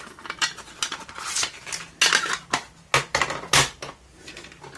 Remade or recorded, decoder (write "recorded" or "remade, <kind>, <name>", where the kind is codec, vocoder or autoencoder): recorded